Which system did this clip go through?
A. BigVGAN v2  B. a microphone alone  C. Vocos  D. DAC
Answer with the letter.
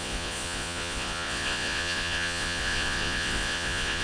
C